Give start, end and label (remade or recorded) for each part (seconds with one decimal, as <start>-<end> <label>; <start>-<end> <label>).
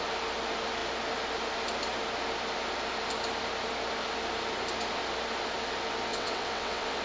0.0-6.1 recorded; 6.1-7.0 remade